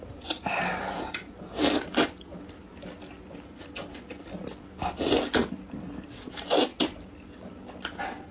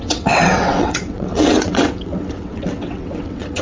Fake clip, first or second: second